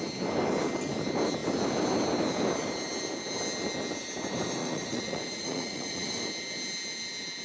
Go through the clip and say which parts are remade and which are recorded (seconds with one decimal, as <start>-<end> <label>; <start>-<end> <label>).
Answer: 0.0-4.6 recorded; 4.6-6.2 remade; 6.2-7.4 recorded